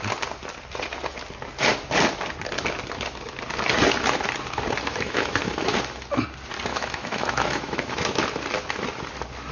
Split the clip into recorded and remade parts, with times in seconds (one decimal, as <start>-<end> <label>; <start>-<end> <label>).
0.0-4.9 recorded; 4.9-5.8 remade; 5.8-6.7 recorded; 6.7-8.2 remade; 8.2-9.5 recorded